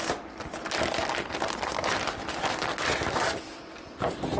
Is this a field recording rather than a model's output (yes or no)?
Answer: yes